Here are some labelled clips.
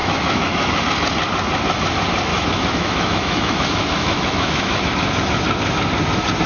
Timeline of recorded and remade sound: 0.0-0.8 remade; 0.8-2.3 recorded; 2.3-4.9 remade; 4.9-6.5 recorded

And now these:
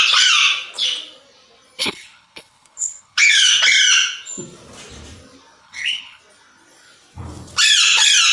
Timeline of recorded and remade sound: 0.0-1.8 recorded; 1.8-3.5 remade; 3.5-5.6 recorded; 5.6-6.2 remade; 6.2-8.3 recorded

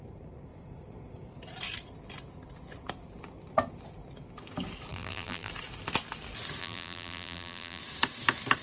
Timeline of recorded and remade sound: 0.0-4.9 recorded; 4.9-5.5 remade; 5.5-6.6 recorded; 6.6-7.8 remade; 7.8-8.6 recorded

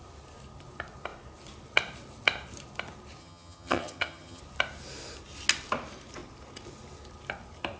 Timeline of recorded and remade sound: 0.0-3.2 recorded; 3.2-4.4 remade; 4.4-7.8 recorded

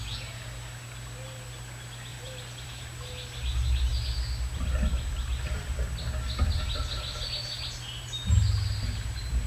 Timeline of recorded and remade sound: 0.0-2.1 recorded; 2.1-2.7 remade; 2.7-5.3 recorded; 5.3-5.9 remade; 5.9-9.5 recorded

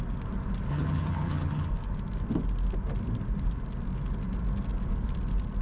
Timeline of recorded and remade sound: 0.0-0.7 recorded; 0.7-1.7 remade; 1.7-5.6 recorded

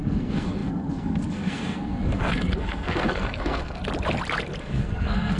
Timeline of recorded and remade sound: 0.0-3.8 remade; 3.8-4.6 recorded; 4.6-5.4 remade

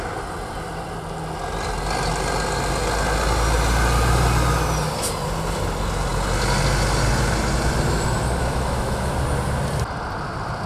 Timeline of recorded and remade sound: 0.0-8.4 recorded; 8.4-9.1 remade; 9.1-10.7 recorded